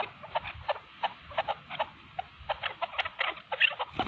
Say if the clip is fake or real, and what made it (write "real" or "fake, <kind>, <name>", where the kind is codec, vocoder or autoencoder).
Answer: real